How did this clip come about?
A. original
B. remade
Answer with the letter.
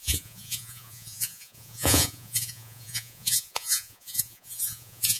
B